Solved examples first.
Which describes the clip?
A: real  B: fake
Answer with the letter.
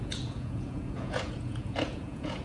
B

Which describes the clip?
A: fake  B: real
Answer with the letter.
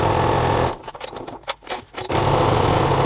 B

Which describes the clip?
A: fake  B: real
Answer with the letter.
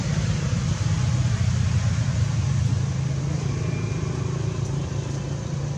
B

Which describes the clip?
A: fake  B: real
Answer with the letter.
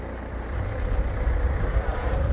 B